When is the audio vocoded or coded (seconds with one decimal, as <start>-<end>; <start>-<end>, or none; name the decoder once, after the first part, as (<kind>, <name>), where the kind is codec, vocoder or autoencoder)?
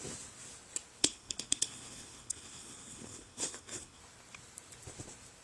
1.0-4.0 (codec, HILCodec)